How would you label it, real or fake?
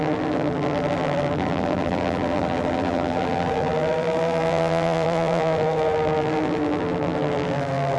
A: fake